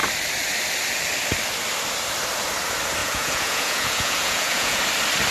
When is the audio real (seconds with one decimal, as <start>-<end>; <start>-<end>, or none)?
0.0-3.0; 4.8-5.3